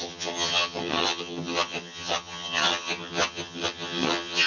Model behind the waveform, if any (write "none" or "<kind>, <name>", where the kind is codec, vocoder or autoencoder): vocoder, HiFi-GAN